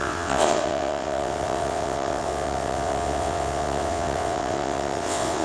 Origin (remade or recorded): remade